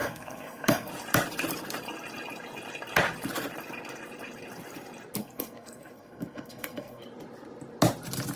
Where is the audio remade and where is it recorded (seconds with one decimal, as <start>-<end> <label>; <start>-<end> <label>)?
0.0-0.9 remade; 0.9-5.2 recorded; 5.2-7.0 remade; 7.0-8.4 recorded